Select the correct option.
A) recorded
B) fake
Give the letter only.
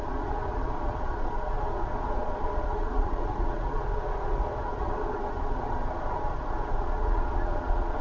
B